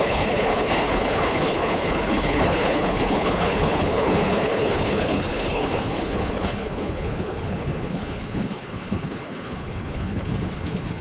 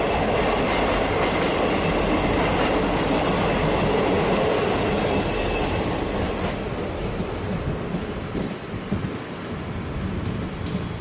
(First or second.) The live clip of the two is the second